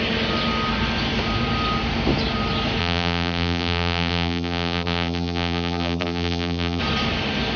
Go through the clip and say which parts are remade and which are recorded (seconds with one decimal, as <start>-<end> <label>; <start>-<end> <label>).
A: 0.0-2.8 recorded; 2.8-6.8 remade; 6.8-7.6 recorded